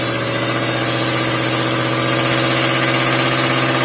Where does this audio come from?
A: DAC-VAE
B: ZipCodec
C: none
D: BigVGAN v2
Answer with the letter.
C